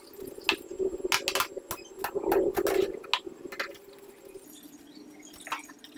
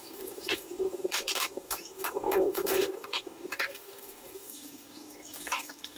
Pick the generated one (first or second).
second